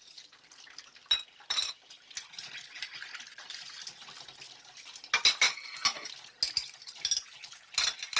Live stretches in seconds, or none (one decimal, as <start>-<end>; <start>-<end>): 0.0-8.2